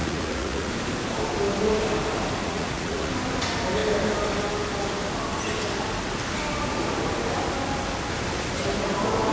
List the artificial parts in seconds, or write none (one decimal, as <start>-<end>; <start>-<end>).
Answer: 0.0-0.7; 2.4-3.1